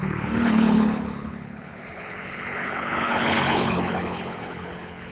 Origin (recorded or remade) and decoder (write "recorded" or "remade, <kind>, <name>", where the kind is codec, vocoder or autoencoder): remade, codec, HILCodec